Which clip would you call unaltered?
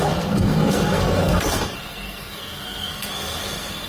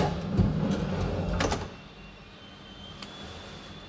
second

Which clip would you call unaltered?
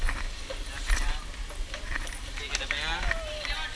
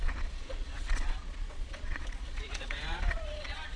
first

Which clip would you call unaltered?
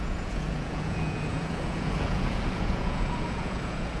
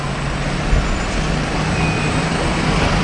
second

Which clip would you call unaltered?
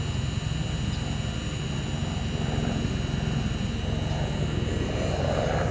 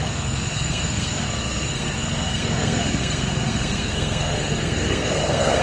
first